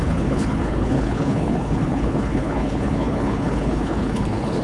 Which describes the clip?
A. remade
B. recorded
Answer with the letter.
A